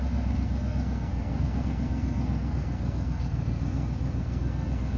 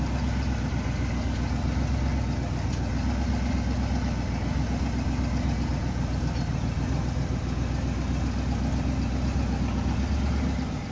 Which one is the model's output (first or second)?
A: first